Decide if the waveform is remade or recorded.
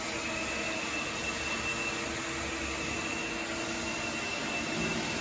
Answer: recorded